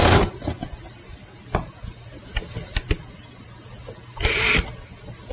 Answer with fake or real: real